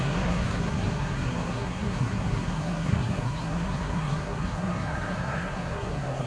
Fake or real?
fake